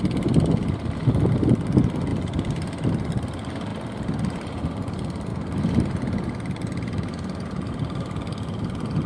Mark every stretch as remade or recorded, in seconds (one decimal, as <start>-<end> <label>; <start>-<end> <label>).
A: 0.0-9.1 recorded